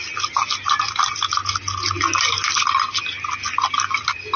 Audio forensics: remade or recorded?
recorded